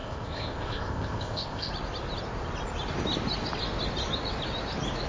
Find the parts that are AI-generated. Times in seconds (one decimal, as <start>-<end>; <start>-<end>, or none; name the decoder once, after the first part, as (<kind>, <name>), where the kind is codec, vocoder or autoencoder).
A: 0.0-1.7 (codec, ZipCodec)